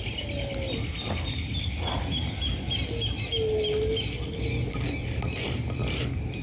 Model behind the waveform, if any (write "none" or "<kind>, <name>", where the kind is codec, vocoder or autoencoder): none